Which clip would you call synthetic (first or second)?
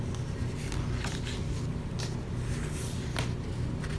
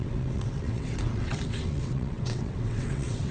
second